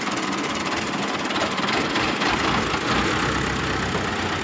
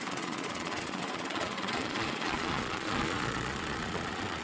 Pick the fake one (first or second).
second